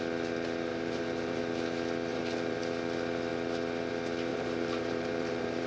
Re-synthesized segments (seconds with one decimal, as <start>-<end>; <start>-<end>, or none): 0.7-1.4; 2.1-2.6; 4.3-5.7